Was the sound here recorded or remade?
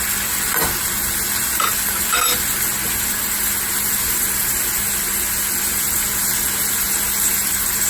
recorded